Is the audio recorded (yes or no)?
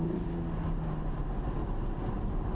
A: yes